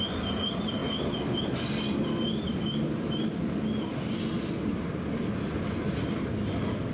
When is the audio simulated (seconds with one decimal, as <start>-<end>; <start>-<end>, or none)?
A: none